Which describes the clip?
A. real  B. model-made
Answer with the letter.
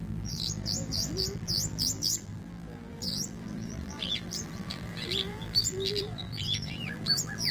B